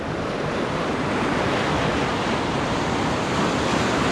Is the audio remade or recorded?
recorded